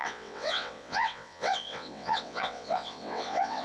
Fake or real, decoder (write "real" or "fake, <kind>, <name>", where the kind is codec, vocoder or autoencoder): fake, vocoder, WaveNeXt